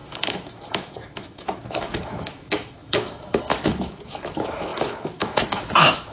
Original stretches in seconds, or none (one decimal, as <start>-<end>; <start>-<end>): none